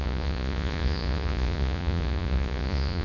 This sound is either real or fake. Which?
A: fake